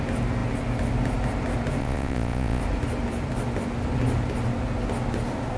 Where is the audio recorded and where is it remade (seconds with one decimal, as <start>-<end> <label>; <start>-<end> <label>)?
0.0-1.8 recorded; 1.8-2.6 remade; 2.6-5.6 recorded